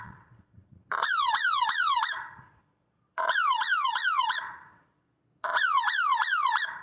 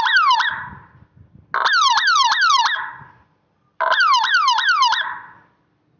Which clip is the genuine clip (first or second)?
second